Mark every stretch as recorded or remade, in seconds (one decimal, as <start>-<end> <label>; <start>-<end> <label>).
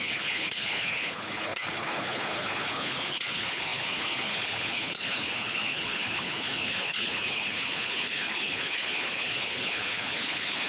0.0-10.7 remade